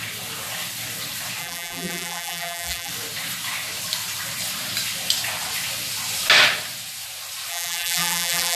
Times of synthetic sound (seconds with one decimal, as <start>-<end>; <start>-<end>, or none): 1.4-2.9; 7.5-8.6